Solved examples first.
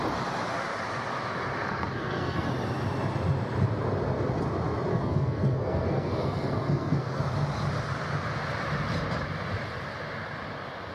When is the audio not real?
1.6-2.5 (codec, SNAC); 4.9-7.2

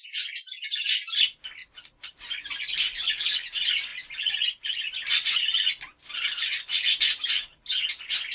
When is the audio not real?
1.6-2.4 (vocoder, BigVGAN v2)

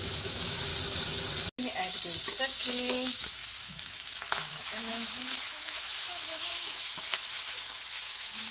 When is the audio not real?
0.0-0.7 (autoencoder, DAC-VAE); 2.4-8.5